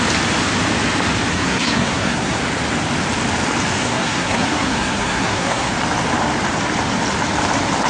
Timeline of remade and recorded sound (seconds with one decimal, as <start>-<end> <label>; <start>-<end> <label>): 0.0-1.3 recorded; 1.3-2.4 remade; 2.4-3.8 recorded; 3.8-5.7 remade; 5.7-7.9 recorded